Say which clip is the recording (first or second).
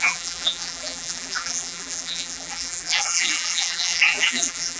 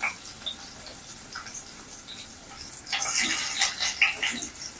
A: second